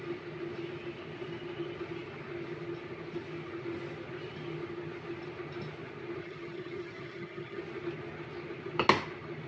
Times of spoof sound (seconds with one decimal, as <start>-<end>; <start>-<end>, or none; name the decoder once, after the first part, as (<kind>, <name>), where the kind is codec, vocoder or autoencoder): 6.2-7.6 (vocoder, HiFi-GAN)